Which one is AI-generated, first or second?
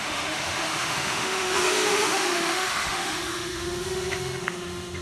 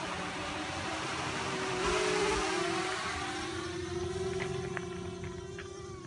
first